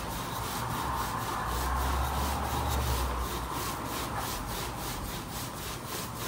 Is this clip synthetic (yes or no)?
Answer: no